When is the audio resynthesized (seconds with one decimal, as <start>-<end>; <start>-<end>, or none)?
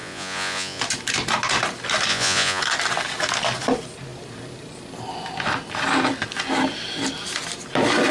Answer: 0.0-0.8; 2.1-2.6